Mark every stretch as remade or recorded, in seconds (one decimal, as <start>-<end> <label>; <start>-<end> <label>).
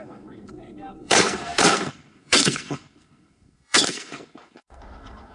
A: 0.0-5.3 remade